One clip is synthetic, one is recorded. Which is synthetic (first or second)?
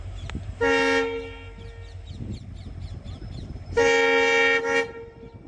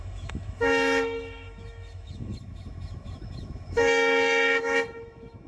second